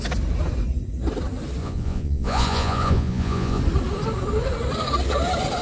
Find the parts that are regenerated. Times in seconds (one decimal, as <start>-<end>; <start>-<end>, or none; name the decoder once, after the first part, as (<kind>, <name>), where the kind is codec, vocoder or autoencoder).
1.6-3.6 (vocoder, Vocos)